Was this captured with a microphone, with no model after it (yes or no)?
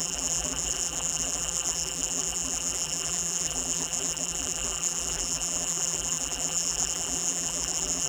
no